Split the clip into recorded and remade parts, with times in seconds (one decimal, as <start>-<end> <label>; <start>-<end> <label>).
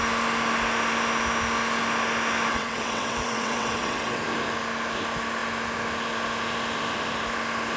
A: 0.0-2.5 recorded; 2.5-4.2 remade; 4.2-7.8 recorded